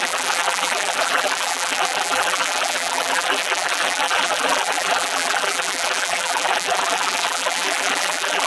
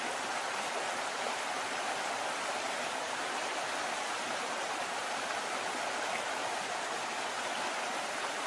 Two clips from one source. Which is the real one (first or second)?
second